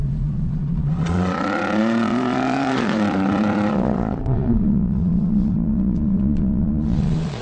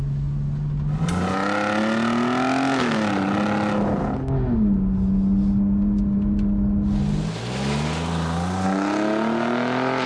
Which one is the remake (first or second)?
first